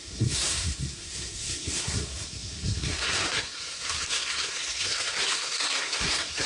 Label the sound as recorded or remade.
remade